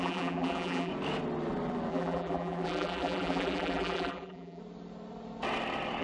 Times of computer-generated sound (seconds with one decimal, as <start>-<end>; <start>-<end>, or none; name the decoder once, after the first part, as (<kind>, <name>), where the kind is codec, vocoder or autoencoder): 0.0-0.9 (vocoder, BigVGAN v2); 1.9-4.6